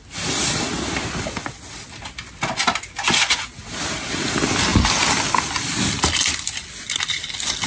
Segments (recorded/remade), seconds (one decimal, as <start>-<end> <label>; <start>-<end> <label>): 0.0-7.7 recorded

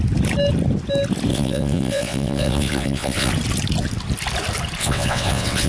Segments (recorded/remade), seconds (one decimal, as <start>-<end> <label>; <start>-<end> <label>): 0.0-1.3 recorded; 1.3-3.3 remade; 3.3-4.8 recorded; 4.8-5.7 remade

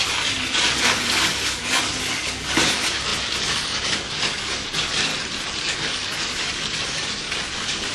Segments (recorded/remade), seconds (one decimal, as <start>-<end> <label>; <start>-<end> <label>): 0.0-5.1 remade; 5.1-5.6 recorded; 5.6-7.9 remade

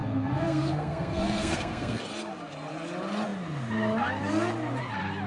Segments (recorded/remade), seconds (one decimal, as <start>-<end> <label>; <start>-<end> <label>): 0.0-2.0 remade; 2.0-5.3 recorded

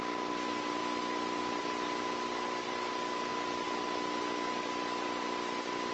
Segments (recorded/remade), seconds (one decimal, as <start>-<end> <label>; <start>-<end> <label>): 0.0-0.8 recorded; 0.8-1.6 remade; 1.6-5.9 recorded

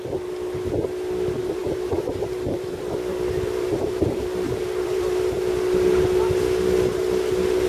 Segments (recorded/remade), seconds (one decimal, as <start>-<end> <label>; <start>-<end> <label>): 0.0-1.6 recorded; 1.6-5.9 remade; 5.9-7.7 recorded

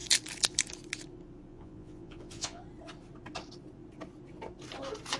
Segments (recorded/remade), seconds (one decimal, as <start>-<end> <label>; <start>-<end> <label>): 0.0-1.5 recorded; 1.5-2.6 remade; 2.6-5.2 recorded

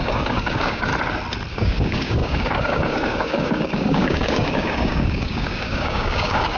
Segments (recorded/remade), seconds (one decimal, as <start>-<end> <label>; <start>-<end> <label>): 0.0-0.9 remade; 0.9-1.5 recorded; 1.5-6.6 remade